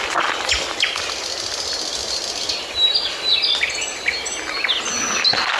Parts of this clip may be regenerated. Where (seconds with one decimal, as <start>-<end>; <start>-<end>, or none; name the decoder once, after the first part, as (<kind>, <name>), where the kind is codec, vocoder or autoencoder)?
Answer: none